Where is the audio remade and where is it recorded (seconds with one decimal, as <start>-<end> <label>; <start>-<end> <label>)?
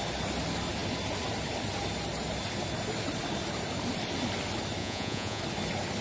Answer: 0.0-4.8 recorded; 4.8-5.4 remade; 5.4-6.0 recorded